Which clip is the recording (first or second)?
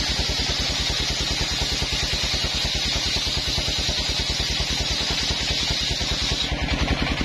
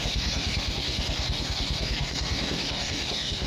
first